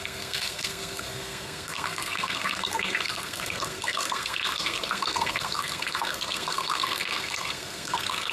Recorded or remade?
remade